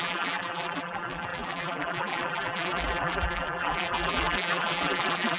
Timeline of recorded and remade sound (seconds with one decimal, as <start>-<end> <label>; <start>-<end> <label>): 0.0-5.4 remade

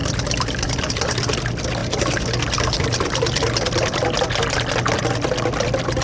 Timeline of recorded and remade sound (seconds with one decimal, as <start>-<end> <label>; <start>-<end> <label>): 0.0-6.0 recorded

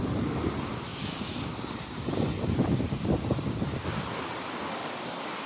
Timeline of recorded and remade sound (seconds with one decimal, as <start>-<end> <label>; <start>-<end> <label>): 0.0-0.9 recorded; 0.9-4.2 remade; 4.2-4.8 recorded; 4.8-5.5 remade

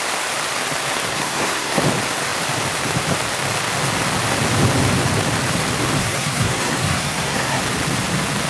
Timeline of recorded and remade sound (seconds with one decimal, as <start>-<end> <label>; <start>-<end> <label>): 0.0-1.1 recorded; 1.1-1.8 remade; 1.8-6.0 recorded; 6.0-7.6 remade; 7.6-8.5 recorded

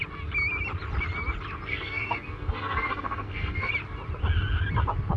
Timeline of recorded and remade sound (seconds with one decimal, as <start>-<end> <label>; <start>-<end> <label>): 0.0-1.7 recorded; 1.7-3.7 remade; 3.7-5.2 recorded

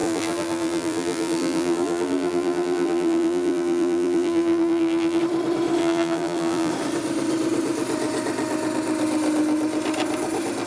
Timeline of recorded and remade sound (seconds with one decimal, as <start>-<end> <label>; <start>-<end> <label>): 0.0-5.2 remade; 5.2-5.8 recorded; 5.8-6.7 remade; 6.7-10.7 recorded

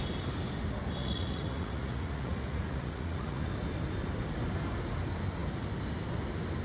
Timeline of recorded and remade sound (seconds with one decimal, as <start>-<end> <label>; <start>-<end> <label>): 0.0-1.0 recorded; 1.0-3.5 remade; 3.5-6.6 recorded